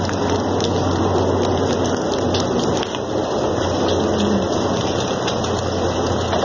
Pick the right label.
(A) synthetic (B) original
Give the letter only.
B